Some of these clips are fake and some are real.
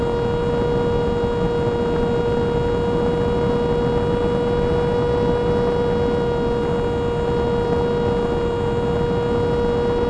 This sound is real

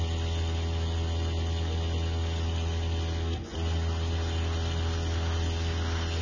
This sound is real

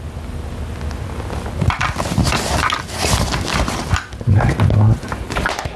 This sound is real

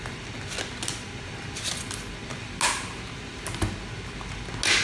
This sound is real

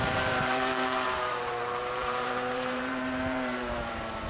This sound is fake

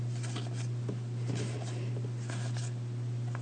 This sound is real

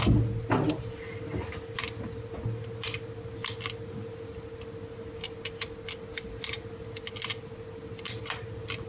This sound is real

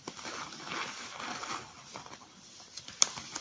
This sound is real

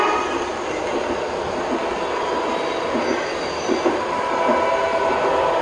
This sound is real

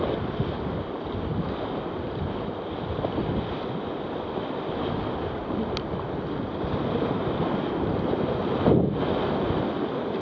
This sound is real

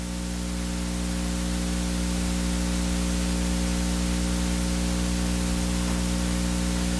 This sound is real